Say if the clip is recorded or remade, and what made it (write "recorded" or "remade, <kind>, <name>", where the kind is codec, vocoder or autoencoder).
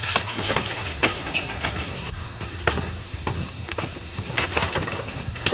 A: remade, codec, SNAC